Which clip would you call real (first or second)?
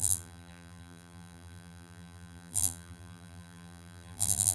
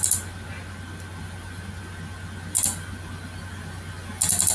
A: second